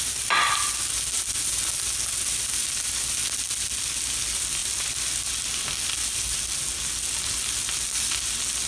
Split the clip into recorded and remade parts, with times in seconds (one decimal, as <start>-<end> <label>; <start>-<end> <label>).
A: 0.0-8.7 recorded